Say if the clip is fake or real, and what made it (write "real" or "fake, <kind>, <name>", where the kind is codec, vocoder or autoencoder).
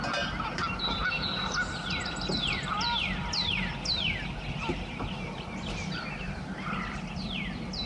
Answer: real